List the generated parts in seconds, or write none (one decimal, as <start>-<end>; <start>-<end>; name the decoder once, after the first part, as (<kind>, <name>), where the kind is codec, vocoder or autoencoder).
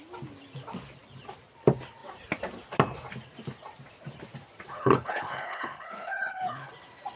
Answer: 4.7-6.7 (codec, HILCodec)